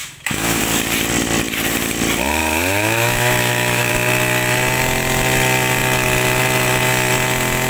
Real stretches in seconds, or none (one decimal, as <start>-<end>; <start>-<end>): 0.6-2.4; 3.9-7.7